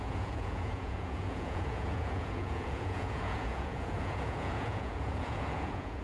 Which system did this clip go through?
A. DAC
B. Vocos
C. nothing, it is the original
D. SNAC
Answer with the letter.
B